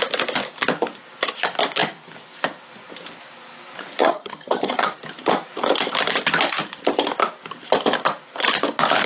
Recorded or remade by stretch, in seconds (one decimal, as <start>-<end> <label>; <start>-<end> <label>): 0.0-4.0 recorded; 4.0-4.9 remade; 4.9-9.1 recorded